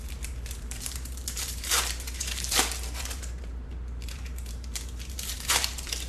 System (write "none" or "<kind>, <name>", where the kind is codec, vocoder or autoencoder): vocoder, BigVGAN v2